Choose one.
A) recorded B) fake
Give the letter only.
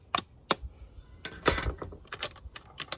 A